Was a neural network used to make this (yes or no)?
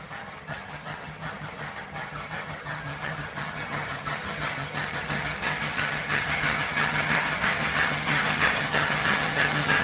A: yes